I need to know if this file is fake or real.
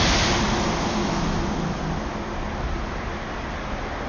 real